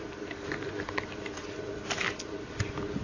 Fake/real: real